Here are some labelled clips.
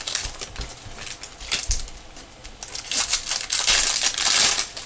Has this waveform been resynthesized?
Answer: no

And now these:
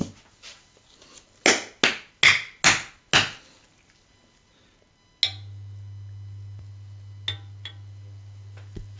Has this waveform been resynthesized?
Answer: no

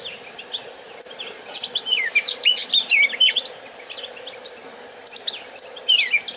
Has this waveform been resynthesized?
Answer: no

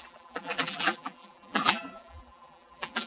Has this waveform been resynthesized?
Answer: yes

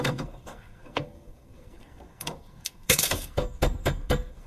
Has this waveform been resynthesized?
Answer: yes